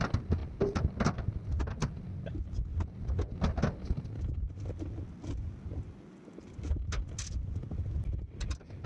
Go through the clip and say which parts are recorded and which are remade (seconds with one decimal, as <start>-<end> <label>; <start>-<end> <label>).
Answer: 0.0-8.9 recorded